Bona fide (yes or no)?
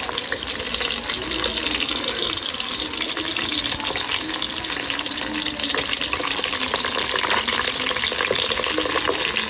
yes